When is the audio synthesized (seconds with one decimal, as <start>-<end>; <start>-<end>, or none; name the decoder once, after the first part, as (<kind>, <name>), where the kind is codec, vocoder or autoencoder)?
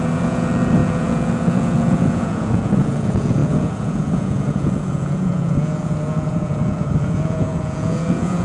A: 0.0-8.4 (vocoder, Vocos)